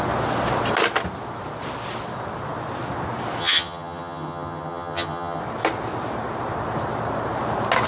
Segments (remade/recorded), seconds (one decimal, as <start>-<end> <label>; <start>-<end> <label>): 0.0-3.4 recorded; 3.4-5.4 remade; 5.4-7.9 recorded